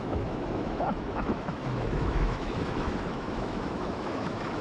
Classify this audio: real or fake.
fake